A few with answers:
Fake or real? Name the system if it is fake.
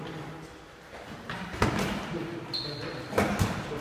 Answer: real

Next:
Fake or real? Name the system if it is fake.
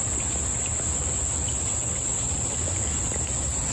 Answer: real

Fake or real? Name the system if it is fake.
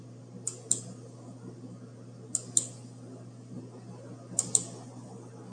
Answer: real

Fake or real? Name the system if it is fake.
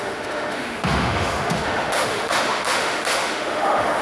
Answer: fake, autoencoder, DAC-VAE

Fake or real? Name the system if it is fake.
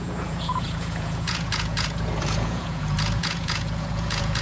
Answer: fake, vocoder, Vocos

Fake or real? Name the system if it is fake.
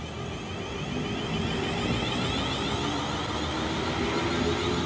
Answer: real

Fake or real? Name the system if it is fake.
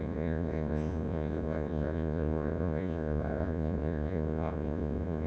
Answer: fake, vocoder, Vocos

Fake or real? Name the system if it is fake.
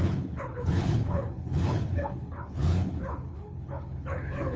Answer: fake, codec, HILCodec